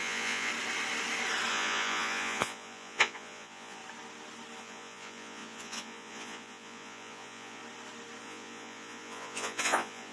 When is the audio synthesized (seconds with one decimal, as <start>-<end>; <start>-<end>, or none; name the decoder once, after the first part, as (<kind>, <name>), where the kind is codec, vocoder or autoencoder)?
0.0-0.5 (vocoder, Vocos); 1.5-3.8; 4.6-7.6; 8.2-10.1